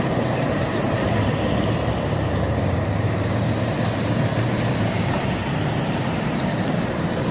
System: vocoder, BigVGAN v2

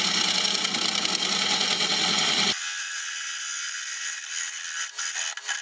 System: none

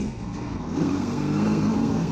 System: codec, SNAC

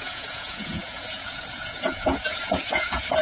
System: vocoder, Vocos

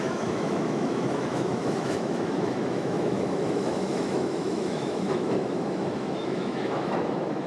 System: autoencoder, DAC-VAE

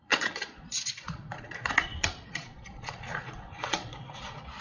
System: vocoder, Vocos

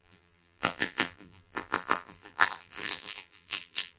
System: vocoder, BigVGAN v2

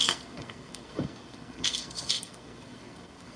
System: codec, SNAC